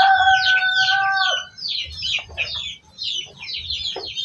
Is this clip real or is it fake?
real